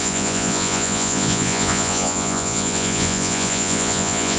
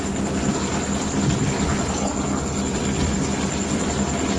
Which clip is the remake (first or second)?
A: first